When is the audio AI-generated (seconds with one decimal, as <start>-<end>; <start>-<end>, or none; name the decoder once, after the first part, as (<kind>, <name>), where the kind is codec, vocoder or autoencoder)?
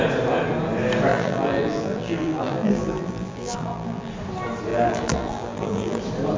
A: 1.1-4.1 (vocoder, BigVGAN v2); 4.7-6.0